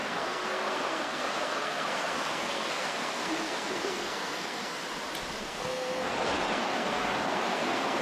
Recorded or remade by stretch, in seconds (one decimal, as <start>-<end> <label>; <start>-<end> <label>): 0.0-4.8 remade; 4.8-5.4 recorded; 5.4-8.0 remade